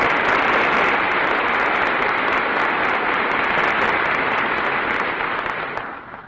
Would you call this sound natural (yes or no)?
yes